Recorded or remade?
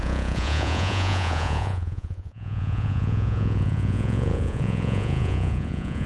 remade